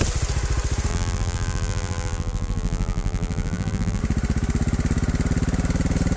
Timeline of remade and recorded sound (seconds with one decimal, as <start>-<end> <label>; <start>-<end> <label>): 0.0-0.9 recorded; 0.9-4.0 remade; 4.0-6.2 recorded